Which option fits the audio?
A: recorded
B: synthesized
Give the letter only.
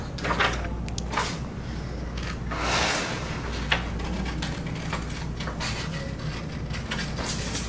A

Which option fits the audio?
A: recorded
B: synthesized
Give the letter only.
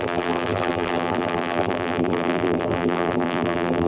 B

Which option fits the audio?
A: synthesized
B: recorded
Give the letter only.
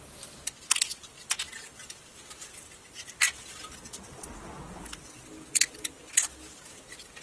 B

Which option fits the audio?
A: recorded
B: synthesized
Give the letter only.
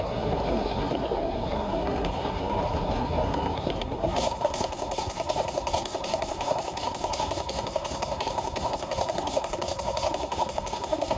B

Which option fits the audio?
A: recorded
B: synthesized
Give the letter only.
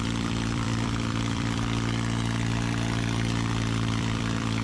B